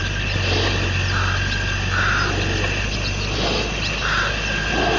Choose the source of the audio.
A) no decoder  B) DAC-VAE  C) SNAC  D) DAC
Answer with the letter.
A